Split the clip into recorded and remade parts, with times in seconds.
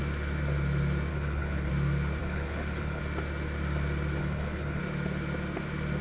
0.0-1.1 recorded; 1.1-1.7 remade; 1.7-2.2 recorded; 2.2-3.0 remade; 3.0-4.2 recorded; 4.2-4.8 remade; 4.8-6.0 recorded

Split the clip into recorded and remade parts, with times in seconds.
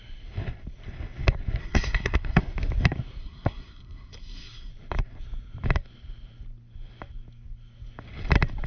0.0-1.6 recorded; 1.6-2.4 remade; 2.4-3.2 recorded; 3.2-4.7 remade; 4.7-8.7 recorded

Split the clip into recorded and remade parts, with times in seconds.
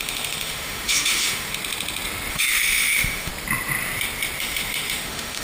0.0-1.6 remade; 1.6-2.3 recorded; 2.3-3.3 remade; 3.3-4.4 recorded; 4.4-5.4 remade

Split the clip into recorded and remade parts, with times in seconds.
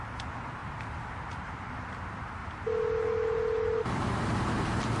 0.0-0.6 recorded; 0.6-1.8 remade; 1.8-2.4 recorded; 2.4-4.3 remade; 4.3-5.0 recorded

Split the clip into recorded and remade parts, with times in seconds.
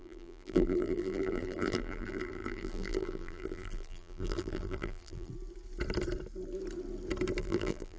0.0-5.3 remade; 5.3-7.4 recorded; 7.4-8.0 remade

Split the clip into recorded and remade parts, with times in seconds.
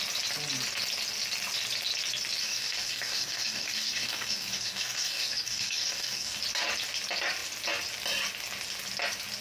0.0-2.4 recorded; 2.4-6.4 remade; 6.4-9.4 recorded